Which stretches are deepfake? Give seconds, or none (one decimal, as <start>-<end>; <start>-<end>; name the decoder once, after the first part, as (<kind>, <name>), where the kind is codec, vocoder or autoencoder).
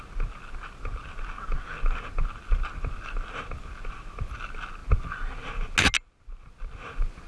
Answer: none